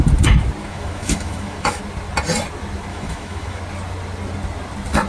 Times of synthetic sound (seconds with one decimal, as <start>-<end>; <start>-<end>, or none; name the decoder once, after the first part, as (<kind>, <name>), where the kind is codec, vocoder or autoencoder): 0.6-1.8 (autoencoder, DAC-VAE); 2.9-3.6